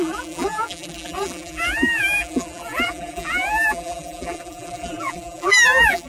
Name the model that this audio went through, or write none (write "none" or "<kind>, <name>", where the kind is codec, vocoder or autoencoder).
vocoder, BigVGAN v2